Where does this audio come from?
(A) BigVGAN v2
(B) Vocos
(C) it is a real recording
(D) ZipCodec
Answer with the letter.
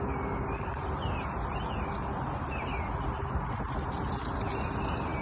C